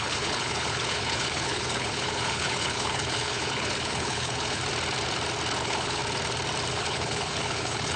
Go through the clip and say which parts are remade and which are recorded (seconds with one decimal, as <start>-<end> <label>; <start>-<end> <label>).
0.0-4.6 remade; 4.6-5.6 recorded; 5.6-6.0 remade; 6.0-6.7 recorded; 6.7-8.0 remade